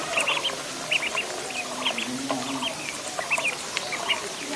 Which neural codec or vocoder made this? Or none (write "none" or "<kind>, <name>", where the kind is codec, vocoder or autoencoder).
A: none